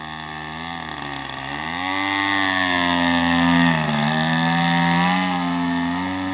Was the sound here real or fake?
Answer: real